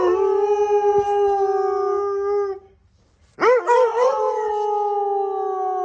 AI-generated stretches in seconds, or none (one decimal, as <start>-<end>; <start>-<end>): 3.9-4.5